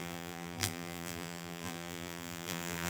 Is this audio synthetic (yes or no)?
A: yes